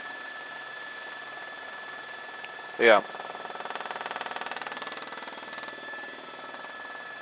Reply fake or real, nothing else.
real